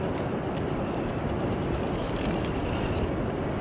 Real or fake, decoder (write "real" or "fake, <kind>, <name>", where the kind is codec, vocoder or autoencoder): real